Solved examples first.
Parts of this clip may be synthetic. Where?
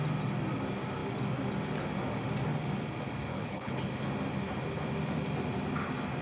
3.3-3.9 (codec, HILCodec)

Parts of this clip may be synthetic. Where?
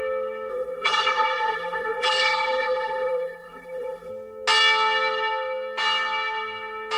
0.5-4.1 (vocoder, BigVGAN v2)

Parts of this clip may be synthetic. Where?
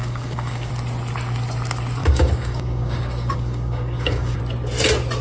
0.0-0.7 (codec, DAC); 2.0-4.4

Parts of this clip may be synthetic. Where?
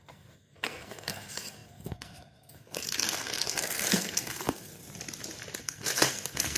0.0-4.8 (codec, SNAC); 5.6-6.6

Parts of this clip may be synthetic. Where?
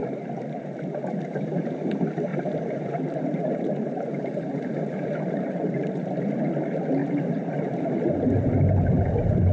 0.0-1.6 (vocoder, BigVGAN v2); 2.3-6.3; 7.0-7.8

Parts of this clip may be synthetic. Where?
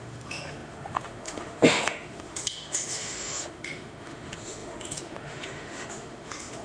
0.0-6.6 (autoencoder, DAC-VAE)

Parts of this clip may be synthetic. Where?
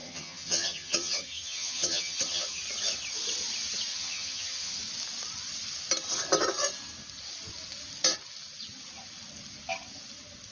0.0-2.6 (vocoder, HiFi-GAN); 3.9-4.8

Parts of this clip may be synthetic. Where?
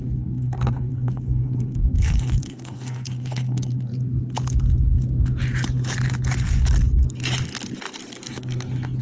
0.0-3.9 (codec, SNAC); 8.3-9.0